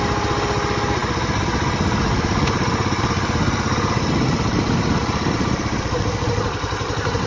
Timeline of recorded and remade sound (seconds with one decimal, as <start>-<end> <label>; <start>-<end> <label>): 0.0-7.3 recorded